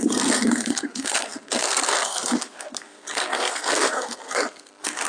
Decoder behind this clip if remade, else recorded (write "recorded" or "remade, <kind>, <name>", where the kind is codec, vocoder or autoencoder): remade, codec, SNAC